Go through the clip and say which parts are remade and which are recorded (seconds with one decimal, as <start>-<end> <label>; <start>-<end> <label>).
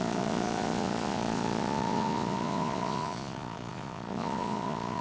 0.0-5.0 remade